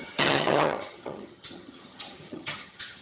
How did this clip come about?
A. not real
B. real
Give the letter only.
A